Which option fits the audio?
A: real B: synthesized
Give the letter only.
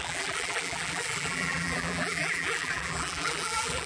B